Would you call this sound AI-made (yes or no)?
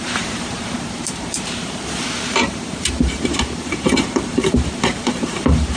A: yes